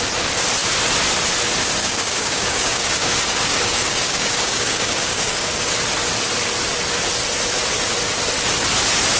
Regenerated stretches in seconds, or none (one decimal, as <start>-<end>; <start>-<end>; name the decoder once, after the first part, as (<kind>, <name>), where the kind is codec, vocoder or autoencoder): 1.8-5.7 (codec, DAC)